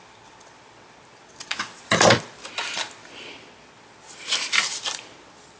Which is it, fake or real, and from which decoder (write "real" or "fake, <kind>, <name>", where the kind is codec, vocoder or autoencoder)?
real